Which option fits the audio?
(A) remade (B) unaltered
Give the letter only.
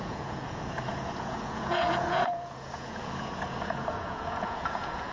A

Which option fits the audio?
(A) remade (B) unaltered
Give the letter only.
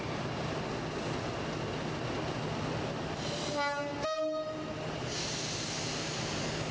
B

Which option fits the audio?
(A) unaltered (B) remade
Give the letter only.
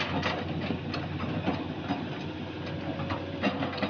A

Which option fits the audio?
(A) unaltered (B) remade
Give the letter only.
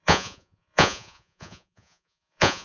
B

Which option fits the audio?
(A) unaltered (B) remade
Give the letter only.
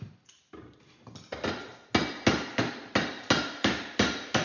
A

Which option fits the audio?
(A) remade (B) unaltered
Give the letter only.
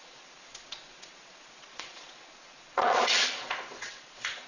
A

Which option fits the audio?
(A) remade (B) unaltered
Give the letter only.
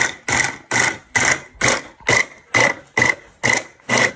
B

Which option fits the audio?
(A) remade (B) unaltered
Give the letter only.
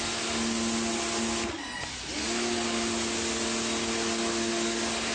B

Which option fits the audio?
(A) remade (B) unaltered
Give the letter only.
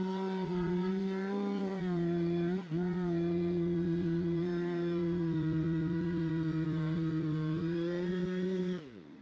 A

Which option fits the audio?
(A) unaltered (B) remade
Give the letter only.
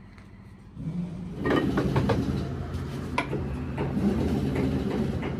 A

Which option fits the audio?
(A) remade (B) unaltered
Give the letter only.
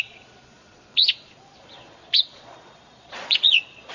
A